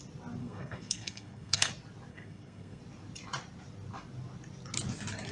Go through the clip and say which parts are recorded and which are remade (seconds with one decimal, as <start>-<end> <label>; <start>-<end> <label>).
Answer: 0.0-0.4 recorded; 0.4-1.7 remade; 1.7-2.1 recorded; 2.1-2.8 remade; 2.8-5.3 recorded